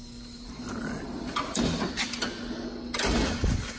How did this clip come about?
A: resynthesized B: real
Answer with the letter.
B